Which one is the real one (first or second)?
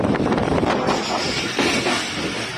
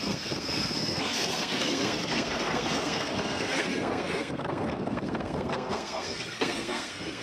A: first